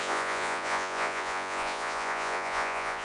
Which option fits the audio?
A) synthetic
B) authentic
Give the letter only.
A